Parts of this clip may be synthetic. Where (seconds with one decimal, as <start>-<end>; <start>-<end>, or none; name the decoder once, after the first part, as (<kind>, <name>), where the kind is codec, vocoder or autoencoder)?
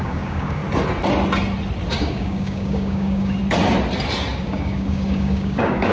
0.0-0.6 (codec, DAC); 2.0-3.4; 4.4-5.9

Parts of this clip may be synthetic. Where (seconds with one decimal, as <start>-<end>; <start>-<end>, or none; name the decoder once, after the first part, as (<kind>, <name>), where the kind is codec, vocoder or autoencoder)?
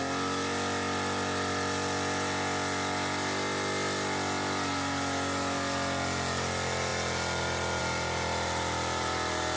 none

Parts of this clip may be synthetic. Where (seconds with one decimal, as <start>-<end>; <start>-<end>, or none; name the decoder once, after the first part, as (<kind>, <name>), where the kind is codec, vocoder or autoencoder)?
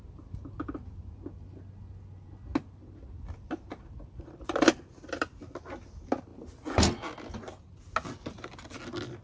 none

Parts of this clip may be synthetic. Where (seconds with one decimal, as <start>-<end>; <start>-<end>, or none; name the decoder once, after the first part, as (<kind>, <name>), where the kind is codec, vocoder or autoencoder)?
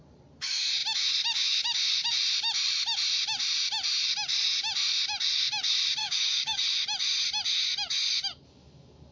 6.0-6.6 (codec, DAC)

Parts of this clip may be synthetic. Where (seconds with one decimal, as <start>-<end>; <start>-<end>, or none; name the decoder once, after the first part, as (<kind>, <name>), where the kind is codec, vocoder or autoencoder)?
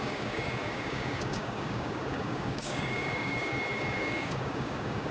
0.0-5.1 (codec, DAC)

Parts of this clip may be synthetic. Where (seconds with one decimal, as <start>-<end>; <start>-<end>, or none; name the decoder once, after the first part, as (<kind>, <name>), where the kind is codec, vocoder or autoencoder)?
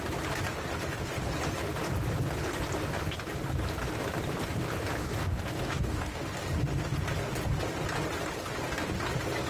5.0-6.2 (codec, DAC)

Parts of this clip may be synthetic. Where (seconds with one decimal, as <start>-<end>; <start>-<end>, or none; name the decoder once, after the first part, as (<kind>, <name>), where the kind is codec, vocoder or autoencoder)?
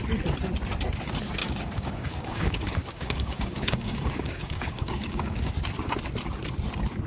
1.4-5.5 (codec, DAC)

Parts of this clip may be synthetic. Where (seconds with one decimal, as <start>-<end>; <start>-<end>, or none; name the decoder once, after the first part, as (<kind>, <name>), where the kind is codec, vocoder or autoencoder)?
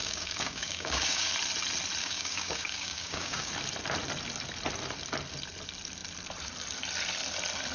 0.0-1.3 (codec, DAC); 2.0-3.5